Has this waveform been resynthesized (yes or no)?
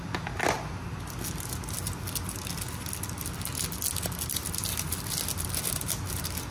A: no